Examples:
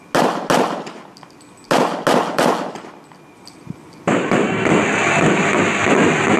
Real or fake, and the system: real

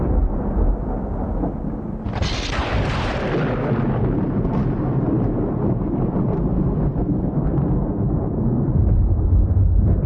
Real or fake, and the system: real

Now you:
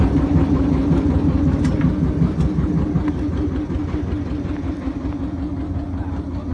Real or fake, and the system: real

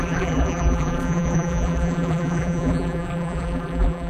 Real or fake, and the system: fake, vocoder, BigVGAN v2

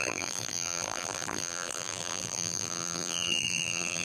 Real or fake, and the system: fake, vocoder, BigVGAN v2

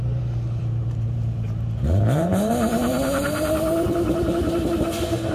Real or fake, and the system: fake, vocoder, BigVGAN v2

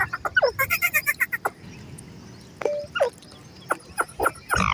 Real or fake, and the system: real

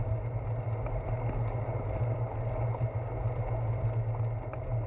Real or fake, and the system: real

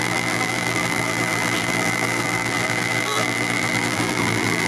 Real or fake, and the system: fake, vocoder, BigVGAN v2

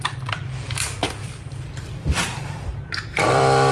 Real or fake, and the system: fake, vocoder, BigVGAN v2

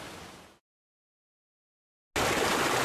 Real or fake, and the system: real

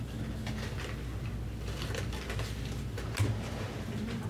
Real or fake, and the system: real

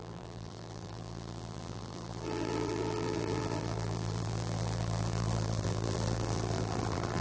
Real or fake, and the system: fake, vocoder, BigVGAN v2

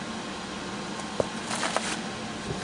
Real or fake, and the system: real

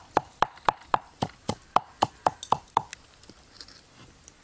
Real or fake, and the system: fake, vocoder, BigVGAN v2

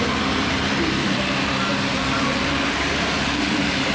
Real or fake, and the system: fake, vocoder, BigVGAN v2